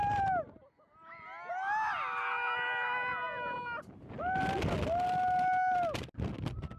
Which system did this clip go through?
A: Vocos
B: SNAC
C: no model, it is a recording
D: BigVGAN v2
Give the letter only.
C